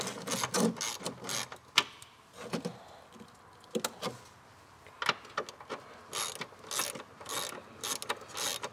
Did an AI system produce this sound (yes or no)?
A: no